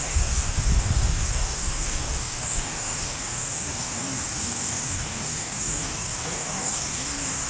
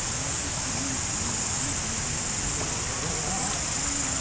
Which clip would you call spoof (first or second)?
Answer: first